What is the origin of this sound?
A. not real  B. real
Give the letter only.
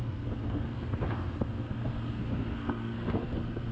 A